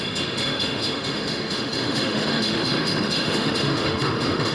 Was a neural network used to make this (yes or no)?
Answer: yes